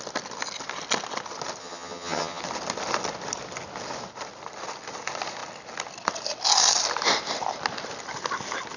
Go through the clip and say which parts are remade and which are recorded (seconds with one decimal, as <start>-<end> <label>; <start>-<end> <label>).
0.0-1.6 recorded; 1.6-2.4 remade; 2.4-8.8 recorded